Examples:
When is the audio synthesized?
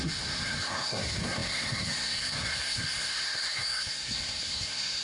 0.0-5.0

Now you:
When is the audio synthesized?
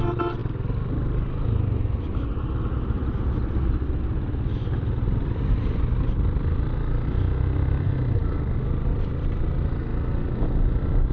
none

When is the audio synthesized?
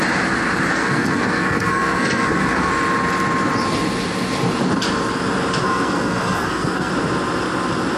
0.7-2.7; 5.6-6.9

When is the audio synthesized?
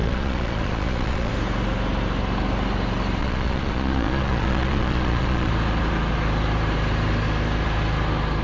0.0-1.3; 3.2-5.5